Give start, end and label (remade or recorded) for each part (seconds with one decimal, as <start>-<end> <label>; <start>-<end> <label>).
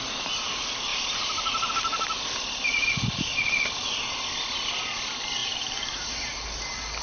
0.0-0.9 recorded; 0.9-1.7 remade; 1.7-5.4 recorded; 5.4-6.0 remade; 6.0-7.0 recorded